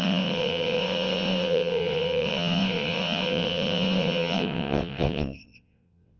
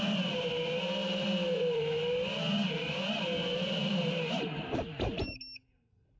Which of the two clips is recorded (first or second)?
second